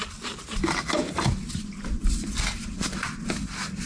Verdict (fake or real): real